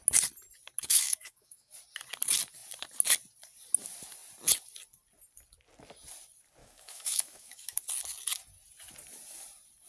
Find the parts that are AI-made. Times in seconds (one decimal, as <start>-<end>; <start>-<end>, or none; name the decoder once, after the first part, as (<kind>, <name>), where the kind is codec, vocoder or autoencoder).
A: 0.8-1.7 (autoencoder, DAC-VAE); 6.6-7.8